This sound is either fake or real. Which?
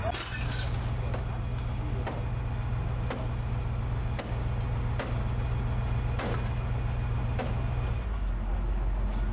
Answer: real